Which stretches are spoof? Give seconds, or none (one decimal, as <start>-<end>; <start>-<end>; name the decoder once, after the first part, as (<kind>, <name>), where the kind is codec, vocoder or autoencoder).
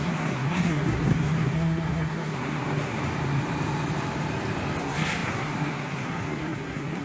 0.0-3.0 (codec, SNAC); 4.8-7.0